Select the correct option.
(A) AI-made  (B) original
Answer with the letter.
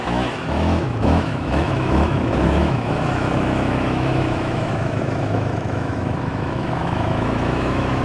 A